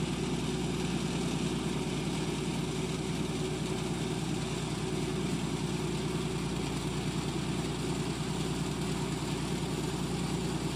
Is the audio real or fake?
real